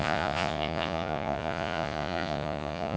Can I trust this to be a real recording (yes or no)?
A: no